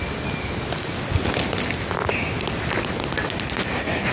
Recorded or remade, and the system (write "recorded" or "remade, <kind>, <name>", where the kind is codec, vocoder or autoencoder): recorded